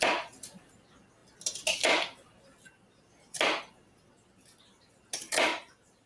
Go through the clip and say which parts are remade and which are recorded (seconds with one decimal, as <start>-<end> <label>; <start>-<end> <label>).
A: 0.0-5.5 recorded; 5.5-6.1 remade